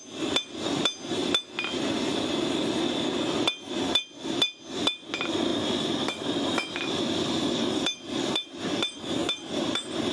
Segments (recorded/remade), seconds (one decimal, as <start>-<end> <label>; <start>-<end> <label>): 0.0-5.5 recorded; 5.5-10.1 remade